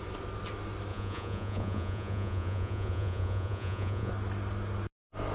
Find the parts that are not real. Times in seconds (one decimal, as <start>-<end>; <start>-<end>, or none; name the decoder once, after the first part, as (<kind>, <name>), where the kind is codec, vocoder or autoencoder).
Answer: 0.9-4.1 (vocoder, Vocos)